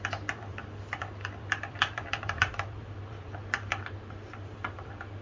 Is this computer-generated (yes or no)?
yes